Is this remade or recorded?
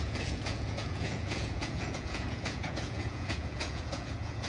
remade